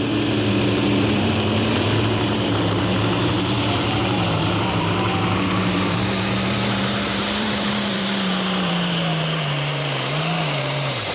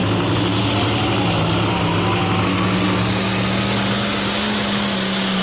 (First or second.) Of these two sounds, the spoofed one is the first